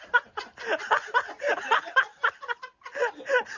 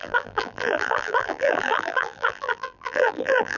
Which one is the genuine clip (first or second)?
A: first